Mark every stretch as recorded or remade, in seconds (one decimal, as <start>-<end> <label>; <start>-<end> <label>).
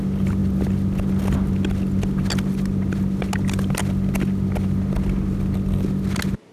0.0-6.5 recorded